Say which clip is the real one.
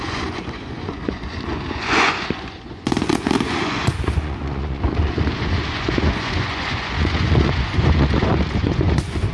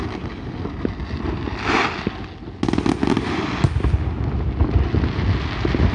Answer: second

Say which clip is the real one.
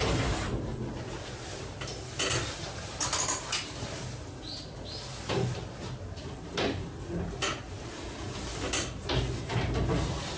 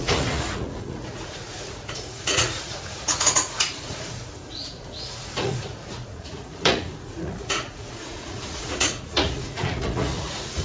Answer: first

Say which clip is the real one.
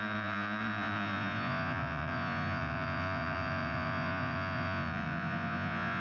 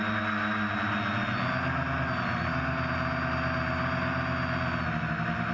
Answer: second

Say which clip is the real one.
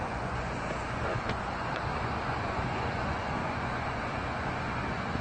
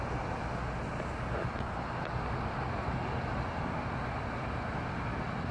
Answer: second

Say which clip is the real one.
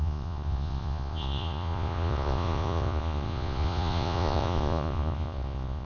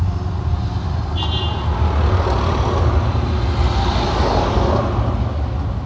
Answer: second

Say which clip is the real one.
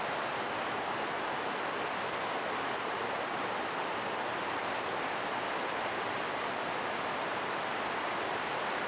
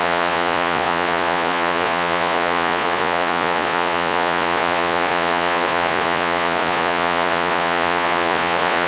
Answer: first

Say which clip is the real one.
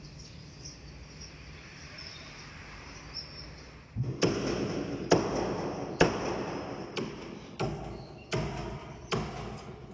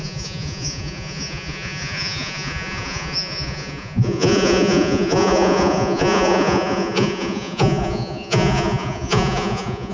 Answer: first